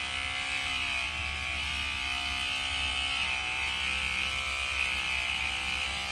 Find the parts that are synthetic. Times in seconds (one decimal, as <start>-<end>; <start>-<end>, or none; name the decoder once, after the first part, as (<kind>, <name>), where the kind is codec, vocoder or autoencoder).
none